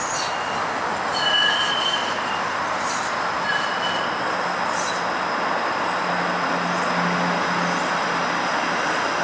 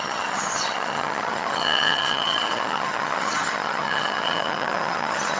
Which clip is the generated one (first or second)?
second